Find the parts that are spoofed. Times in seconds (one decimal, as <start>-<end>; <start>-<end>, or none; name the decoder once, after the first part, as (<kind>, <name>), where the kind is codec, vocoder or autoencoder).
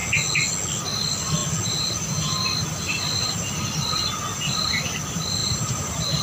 5.4-6.2 (vocoder, BigVGAN v2)